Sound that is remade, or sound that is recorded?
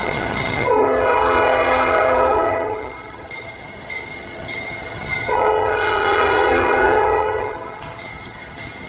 remade